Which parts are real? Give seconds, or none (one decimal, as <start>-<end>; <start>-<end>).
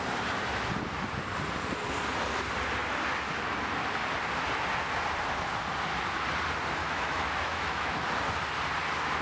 0.0-6.8; 8.0-9.2